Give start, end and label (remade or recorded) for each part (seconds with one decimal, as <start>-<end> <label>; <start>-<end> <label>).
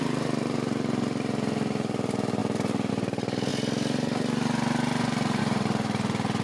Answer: 0.0-3.5 remade; 3.5-5.4 recorded; 5.4-6.4 remade